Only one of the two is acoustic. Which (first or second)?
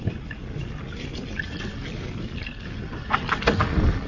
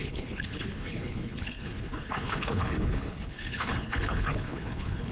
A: first